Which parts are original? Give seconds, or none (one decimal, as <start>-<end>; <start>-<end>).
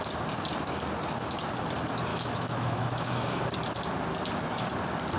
0.0-2.1; 3.4-5.2